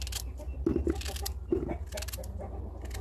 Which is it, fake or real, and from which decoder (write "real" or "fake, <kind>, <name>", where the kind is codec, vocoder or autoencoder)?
real